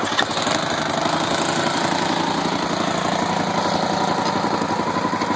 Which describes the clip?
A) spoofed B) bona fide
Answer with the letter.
B